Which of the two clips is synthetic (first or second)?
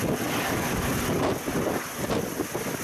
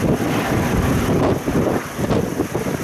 second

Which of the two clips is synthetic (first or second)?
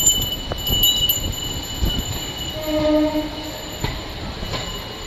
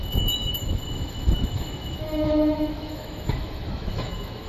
second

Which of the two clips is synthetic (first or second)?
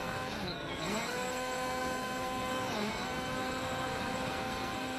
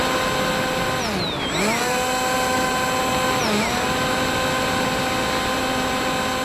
first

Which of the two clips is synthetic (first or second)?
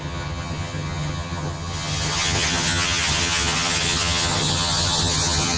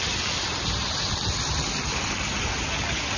first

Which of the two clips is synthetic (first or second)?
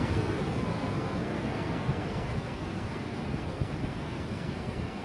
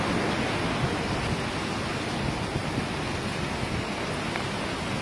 first